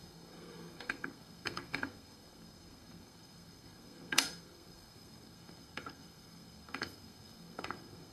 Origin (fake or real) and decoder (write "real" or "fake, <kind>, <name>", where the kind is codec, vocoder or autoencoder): fake, codec, SNAC